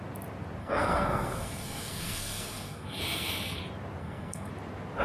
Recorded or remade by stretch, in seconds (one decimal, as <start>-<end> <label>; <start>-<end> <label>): 0.0-0.6 recorded; 0.6-3.6 remade; 3.6-4.0 recorded; 4.0-4.5 remade; 4.5-5.0 recorded